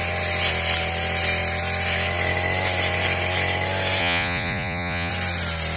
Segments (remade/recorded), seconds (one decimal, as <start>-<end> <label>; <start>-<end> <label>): 0.0-4.0 recorded; 4.0-5.1 remade; 5.1-5.8 recorded